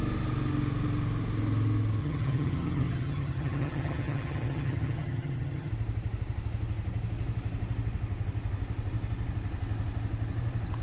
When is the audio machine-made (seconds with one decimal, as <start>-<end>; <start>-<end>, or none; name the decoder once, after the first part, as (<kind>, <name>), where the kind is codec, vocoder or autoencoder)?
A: 2.0-5.7 (vocoder, HiFi-GAN)